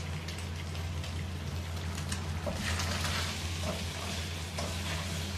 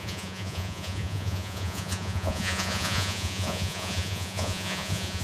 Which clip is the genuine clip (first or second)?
first